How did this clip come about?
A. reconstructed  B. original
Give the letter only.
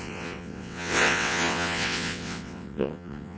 A